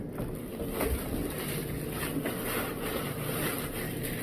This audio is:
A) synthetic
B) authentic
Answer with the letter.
B